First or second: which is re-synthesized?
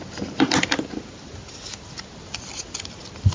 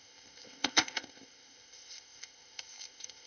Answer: second